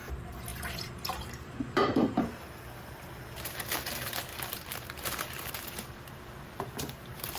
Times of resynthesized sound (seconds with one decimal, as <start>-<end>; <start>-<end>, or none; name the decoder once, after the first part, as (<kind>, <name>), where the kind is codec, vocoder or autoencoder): 0.0-7.4 (vocoder, BigVGAN v2)